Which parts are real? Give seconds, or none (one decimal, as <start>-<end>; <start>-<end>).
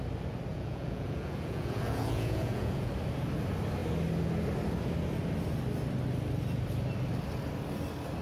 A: 0.0-0.5; 2.9-8.2